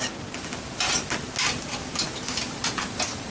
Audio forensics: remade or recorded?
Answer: recorded